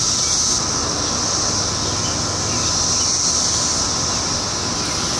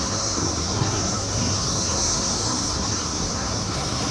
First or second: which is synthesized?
second